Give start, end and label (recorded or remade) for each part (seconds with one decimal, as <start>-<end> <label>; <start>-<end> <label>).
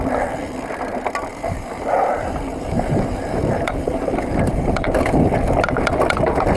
0.0-1.3 recorded; 1.3-5.3 remade; 5.3-6.6 recorded